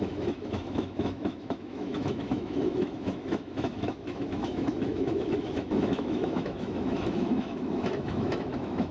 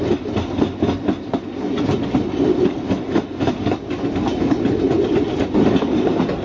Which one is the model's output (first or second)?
first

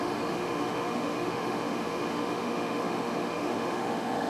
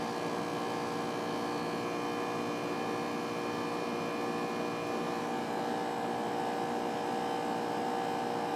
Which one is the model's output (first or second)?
first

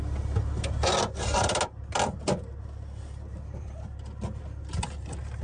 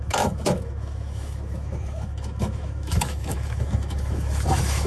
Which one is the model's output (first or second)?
second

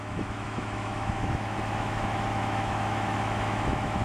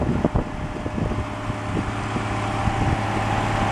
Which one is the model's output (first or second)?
first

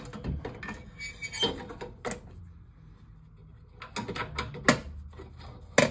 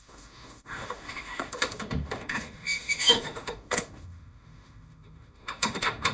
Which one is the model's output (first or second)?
second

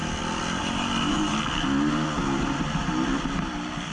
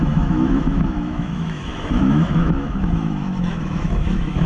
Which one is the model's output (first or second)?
second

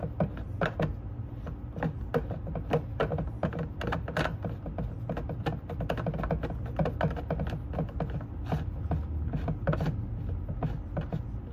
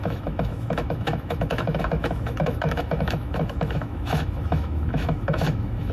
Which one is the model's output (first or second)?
second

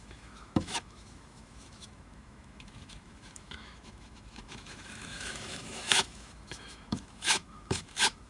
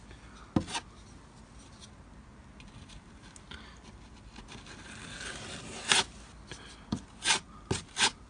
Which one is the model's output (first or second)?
first